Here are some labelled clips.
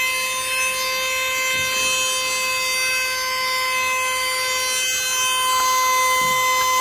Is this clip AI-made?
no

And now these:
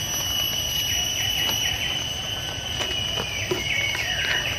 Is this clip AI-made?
no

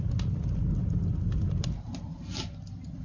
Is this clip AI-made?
no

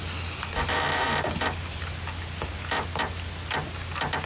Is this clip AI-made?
no